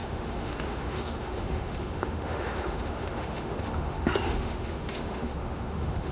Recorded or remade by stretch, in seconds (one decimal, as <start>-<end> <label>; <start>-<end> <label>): 0.0-6.1 remade